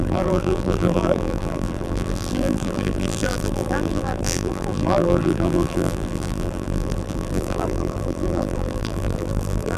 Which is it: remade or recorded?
remade